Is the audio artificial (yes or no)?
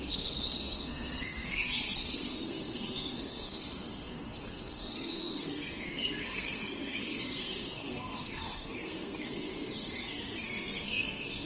yes